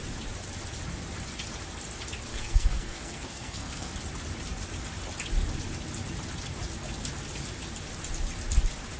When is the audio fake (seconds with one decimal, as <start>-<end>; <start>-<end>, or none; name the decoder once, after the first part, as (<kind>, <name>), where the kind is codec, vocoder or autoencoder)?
2.3-3.9 (codec, SNAC)